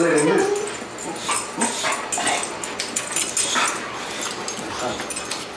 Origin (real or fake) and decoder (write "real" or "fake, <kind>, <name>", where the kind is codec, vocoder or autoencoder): real